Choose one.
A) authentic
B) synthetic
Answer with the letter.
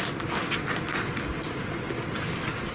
A